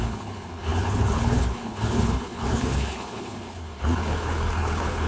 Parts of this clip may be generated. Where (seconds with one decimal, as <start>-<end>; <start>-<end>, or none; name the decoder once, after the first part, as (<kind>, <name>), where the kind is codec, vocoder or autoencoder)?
0.0-5.1 (codec, HILCodec)